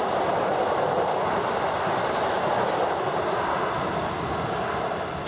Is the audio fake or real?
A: real